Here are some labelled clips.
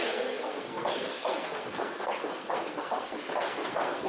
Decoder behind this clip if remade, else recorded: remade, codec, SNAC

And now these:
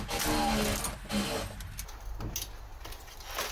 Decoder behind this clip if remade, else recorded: recorded